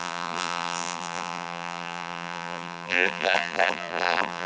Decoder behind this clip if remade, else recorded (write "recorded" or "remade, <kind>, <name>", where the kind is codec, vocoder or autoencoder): remade, vocoder, BigVGAN v2